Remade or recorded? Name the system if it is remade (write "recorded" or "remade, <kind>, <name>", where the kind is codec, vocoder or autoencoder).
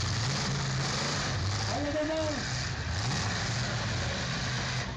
recorded